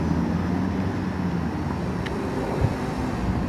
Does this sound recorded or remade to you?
recorded